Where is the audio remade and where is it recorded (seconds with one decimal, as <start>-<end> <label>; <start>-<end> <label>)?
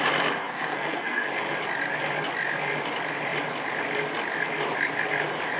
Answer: 0.0-0.4 recorded; 0.4-1.3 remade; 1.3-5.6 recorded